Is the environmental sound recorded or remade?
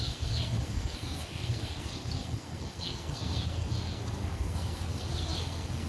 remade